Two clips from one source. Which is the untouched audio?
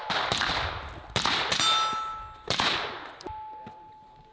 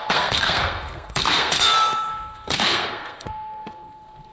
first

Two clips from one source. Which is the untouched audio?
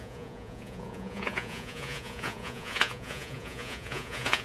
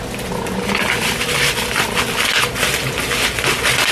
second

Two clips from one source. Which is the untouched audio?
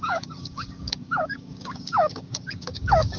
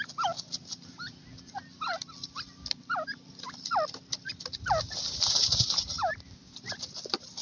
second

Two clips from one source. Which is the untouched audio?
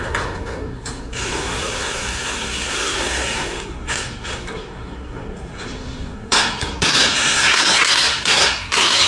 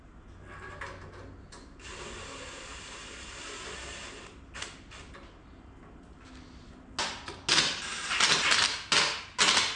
second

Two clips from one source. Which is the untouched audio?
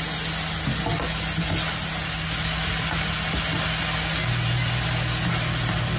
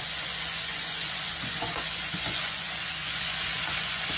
first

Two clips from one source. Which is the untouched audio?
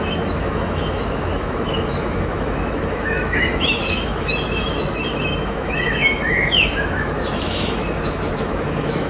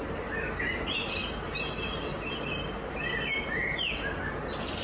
second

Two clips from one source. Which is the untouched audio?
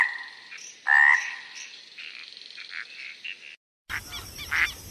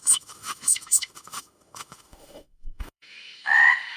first